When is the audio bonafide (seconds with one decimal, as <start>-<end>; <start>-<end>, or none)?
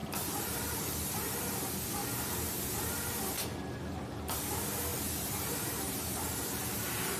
1.4-2.0; 2.6-4.9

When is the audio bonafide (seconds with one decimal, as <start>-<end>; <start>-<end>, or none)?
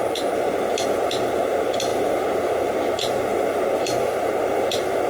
0.0-5.1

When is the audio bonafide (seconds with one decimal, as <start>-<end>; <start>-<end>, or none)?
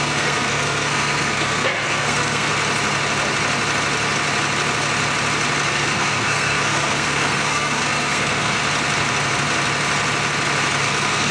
2.5-5.7; 8.6-10.8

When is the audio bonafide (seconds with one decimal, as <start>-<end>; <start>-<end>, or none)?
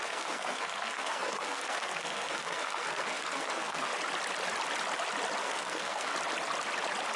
3.9-5.4; 6.1-7.2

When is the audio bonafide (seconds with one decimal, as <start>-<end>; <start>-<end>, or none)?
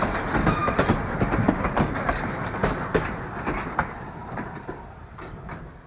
0.0-0.6; 2.5-4.2; 5.5-5.9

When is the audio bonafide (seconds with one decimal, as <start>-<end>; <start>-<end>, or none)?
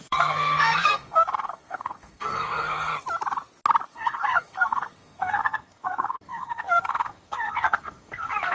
2.9-3.9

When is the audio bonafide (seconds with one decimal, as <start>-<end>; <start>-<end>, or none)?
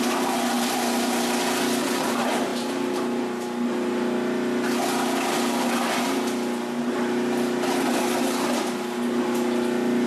0.0-10.1